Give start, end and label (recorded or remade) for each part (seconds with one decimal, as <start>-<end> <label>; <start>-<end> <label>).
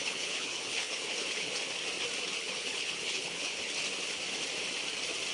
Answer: 0.0-1.5 remade; 1.5-2.4 recorded; 2.4-3.7 remade; 3.7-5.3 recorded